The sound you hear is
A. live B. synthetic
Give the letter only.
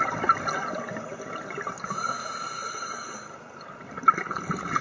A